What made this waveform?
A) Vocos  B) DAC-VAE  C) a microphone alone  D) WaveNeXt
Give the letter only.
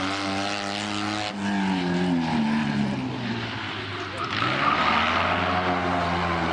C